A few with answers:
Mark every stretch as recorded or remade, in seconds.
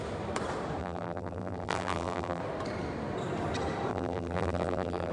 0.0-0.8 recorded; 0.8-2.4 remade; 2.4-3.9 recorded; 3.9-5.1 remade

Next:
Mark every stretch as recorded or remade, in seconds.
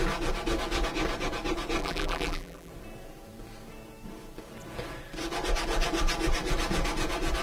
0.0-1.8 recorded; 1.8-2.7 remade; 2.7-7.4 recorded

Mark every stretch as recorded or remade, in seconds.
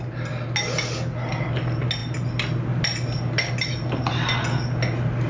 0.0-5.3 recorded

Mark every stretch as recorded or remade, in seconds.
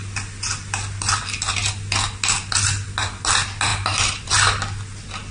0.0-5.3 recorded